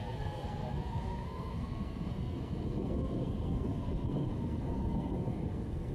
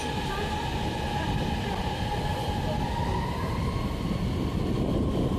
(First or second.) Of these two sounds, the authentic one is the second